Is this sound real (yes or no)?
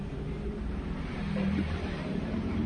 no